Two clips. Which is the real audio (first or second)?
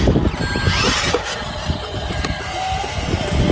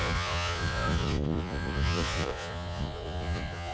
first